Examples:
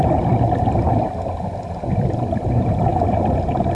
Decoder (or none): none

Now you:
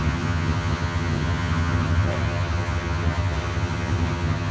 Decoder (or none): vocoder, HiFi-GAN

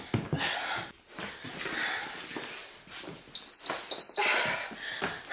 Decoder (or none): none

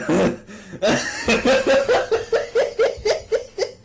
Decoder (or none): none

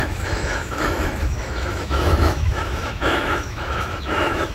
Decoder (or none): autoencoder, DAC-VAE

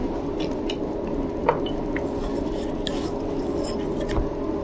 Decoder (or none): none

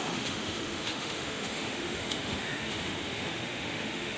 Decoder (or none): autoencoder, DAC-VAE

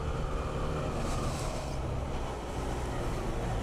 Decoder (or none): none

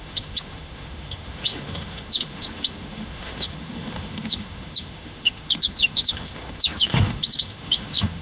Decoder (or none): autoencoder, DAC-VAE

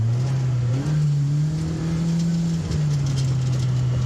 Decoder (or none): none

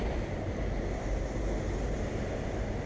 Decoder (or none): none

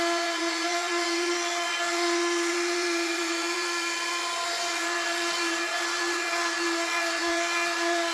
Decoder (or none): vocoder, Vocos